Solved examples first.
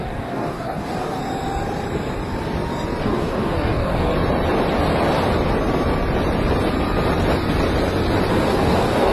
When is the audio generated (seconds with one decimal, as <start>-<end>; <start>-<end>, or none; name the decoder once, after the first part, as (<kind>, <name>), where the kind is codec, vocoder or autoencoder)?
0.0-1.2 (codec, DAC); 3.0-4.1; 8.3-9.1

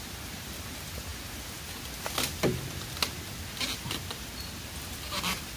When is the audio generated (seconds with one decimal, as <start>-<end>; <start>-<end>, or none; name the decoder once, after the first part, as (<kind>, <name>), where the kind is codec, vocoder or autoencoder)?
none

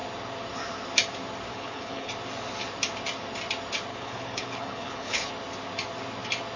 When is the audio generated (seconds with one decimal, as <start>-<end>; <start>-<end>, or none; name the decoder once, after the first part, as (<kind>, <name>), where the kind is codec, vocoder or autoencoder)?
1.5-2.1 (codec, HILCodec); 3.9-5.3

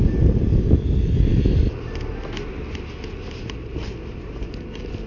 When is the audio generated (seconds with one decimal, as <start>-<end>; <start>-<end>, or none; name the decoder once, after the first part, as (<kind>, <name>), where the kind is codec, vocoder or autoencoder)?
none

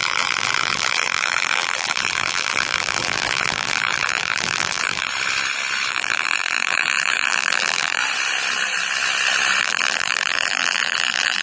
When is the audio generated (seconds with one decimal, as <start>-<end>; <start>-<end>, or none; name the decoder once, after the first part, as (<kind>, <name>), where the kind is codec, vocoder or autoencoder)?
0.0-5.1 (vocoder, BigVGAN v2); 5.9-8.0; 9.6-11.4

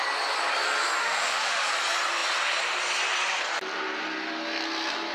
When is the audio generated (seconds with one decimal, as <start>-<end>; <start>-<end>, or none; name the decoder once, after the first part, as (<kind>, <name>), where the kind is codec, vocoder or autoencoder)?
1.0-1.7 (autoencoder, DAC-VAE)

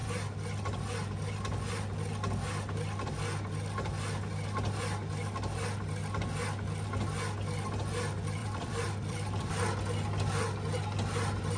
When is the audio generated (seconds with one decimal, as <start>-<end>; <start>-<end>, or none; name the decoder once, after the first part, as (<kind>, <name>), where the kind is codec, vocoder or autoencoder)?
8.4-9.5 (vocoder, BigVGAN v2)